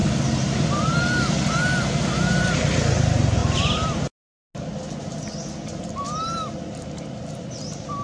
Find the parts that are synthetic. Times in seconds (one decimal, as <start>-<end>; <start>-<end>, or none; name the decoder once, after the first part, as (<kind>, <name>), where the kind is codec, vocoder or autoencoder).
3.4-4.1 (vocoder, BigVGAN v2)